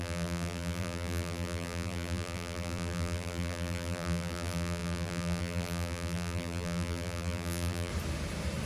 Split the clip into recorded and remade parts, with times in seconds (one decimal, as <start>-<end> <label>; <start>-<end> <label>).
0.0-7.9 remade; 7.9-8.7 recorded